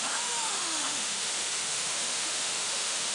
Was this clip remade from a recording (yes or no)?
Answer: yes